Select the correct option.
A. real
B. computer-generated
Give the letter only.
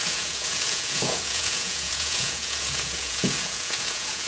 B